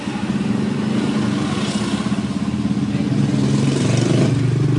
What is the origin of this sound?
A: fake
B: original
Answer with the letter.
B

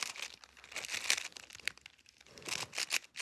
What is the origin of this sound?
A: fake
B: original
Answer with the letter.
B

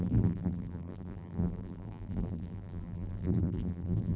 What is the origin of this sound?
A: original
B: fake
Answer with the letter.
B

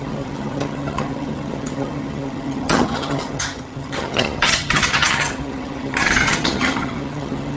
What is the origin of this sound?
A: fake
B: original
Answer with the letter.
A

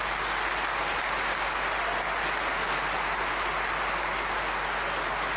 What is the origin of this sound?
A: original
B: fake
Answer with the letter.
A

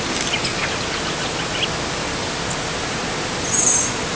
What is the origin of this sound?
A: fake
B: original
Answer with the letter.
B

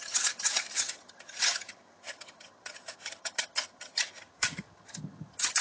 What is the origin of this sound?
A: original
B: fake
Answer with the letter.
B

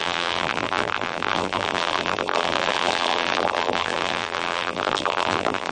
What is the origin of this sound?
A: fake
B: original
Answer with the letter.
A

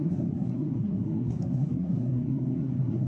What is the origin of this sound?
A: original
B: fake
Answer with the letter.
B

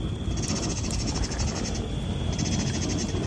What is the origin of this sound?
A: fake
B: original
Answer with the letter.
B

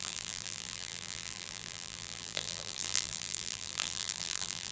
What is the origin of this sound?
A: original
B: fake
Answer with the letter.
B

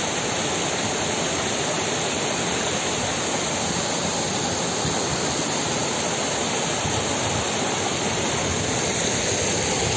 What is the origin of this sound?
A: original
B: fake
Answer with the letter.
A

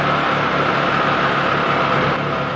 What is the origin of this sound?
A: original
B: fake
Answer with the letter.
A